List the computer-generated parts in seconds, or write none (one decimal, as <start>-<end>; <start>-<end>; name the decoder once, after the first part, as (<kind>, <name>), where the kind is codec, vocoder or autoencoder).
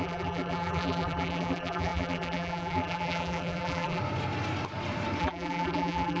0.0-4.0 (vocoder, BigVGAN v2); 5.2-6.2